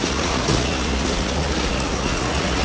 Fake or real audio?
fake